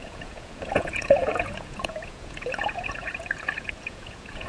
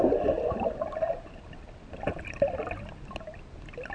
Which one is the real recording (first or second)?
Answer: second